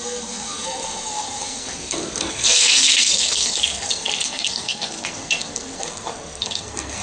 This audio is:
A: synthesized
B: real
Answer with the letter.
A